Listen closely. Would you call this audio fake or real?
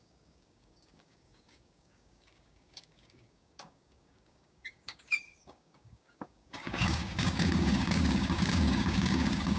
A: fake